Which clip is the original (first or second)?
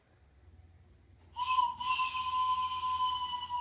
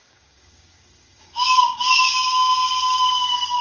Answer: first